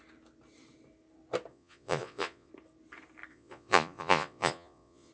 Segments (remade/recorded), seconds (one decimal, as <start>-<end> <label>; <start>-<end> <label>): 0.0-1.5 recorded; 1.5-2.5 remade; 2.5-3.3 recorded; 3.3-5.1 remade